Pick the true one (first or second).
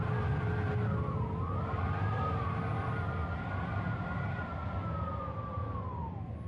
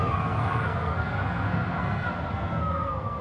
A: first